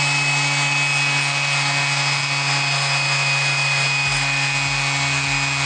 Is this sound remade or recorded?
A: recorded